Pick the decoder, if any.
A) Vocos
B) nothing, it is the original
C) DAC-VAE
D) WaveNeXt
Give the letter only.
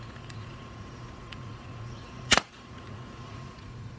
A